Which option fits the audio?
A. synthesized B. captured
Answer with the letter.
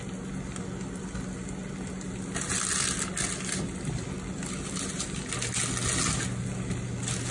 B